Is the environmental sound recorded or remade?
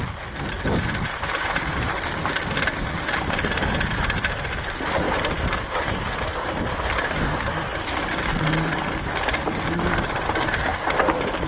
recorded